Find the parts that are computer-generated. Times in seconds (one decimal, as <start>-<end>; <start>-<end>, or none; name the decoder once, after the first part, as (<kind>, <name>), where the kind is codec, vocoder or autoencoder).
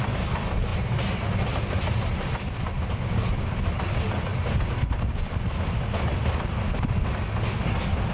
none